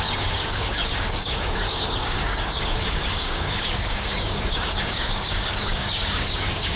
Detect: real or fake fake